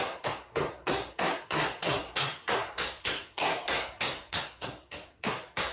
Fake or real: fake